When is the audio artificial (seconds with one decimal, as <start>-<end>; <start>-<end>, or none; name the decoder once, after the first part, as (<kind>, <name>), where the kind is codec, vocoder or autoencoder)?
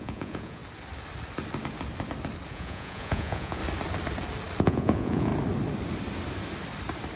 0.0-0.6 (vocoder, Vocos); 2.5-3.6; 4.6-5.3